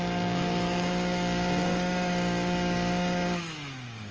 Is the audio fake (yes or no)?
yes